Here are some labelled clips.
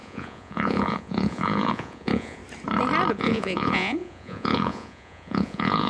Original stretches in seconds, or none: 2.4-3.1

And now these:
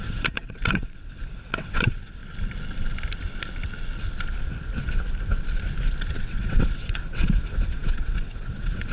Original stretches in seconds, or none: 2.2-6.2

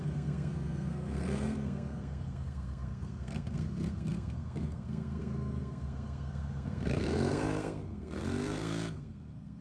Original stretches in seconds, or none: none

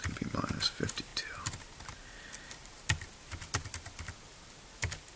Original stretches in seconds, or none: 0.0-5.2

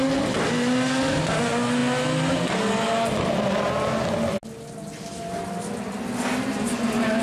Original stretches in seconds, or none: 0.0-7.2

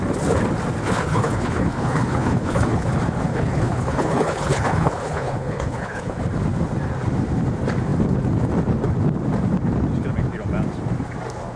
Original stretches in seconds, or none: 0.0-0.8; 2.9-3.3; 6.2-11.6

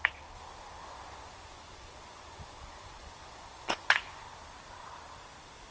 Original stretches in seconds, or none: 0.0-0.8; 4.2-5.7